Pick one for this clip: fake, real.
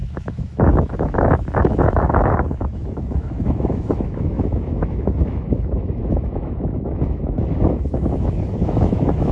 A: fake